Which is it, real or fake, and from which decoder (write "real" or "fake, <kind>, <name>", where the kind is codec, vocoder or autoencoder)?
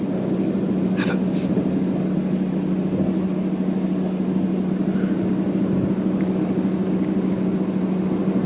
real